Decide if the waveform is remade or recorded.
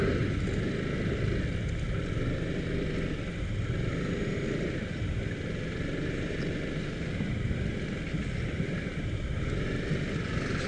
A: recorded